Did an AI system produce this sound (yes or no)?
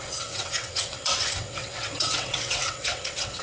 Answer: yes